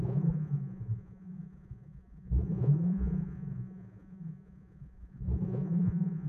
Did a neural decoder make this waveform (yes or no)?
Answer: yes